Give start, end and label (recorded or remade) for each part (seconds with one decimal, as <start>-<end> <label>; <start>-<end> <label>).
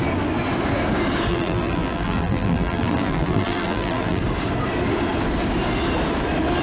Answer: 0.0-1.3 recorded; 1.3-4.2 remade; 4.2-6.6 recorded